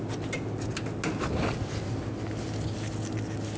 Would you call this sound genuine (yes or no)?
yes